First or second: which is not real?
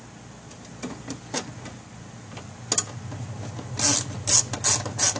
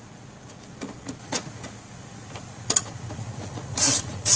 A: second